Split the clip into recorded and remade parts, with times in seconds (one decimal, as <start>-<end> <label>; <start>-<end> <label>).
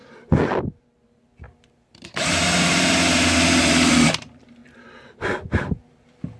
0.0-0.6 recorded; 0.6-4.6 remade; 4.6-6.4 recorded